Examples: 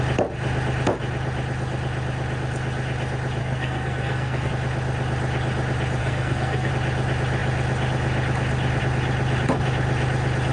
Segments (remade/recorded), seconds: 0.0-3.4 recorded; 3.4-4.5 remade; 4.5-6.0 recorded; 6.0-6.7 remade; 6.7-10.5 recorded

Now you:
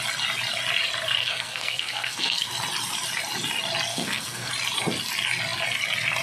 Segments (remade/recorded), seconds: 0.0-1.2 recorded; 1.2-2.5 remade; 2.5-3.9 recorded; 3.9-4.5 remade; 4.5-6.2 recorded

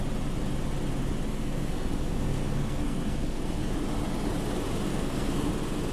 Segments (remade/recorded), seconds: 0.0-1.3 recorded; 1.3-3.6 remade; 3.6-4.9 recorded; 4.9-5.5 remade; 5.5-5.9 recorded

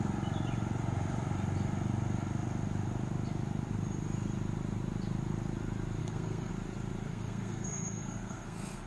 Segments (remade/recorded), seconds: 0.0-6.0 recorded; 6.0-6.5 remade; 6.5-7.1 recorded; 7.1-8.9 remade

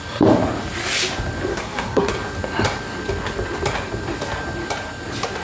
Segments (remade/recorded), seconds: 0.0-1.5 recorded; 1.5-2.1 remade; 2.1-5.4 recorded